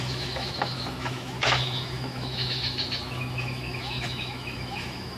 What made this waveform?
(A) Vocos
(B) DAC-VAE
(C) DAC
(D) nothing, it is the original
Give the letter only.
B